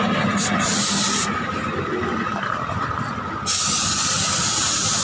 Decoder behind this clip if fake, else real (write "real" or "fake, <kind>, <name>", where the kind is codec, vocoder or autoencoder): real